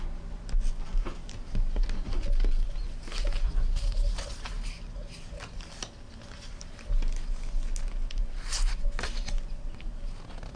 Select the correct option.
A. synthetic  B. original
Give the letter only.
B